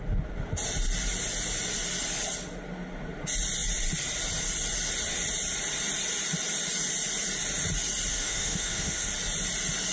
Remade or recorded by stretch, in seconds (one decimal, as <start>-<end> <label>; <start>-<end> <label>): 0.0-8.1 recorded; 8.1-9.1 remade; 9.1-9.9 recorded